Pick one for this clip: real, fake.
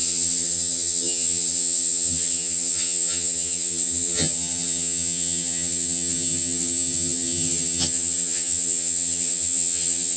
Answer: fake